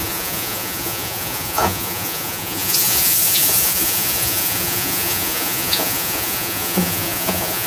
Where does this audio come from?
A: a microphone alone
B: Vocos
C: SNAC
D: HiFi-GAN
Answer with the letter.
B